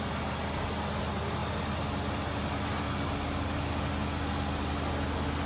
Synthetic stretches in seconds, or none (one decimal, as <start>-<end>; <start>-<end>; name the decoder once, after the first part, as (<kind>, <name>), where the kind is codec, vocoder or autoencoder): none